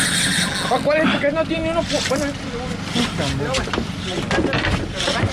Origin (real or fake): real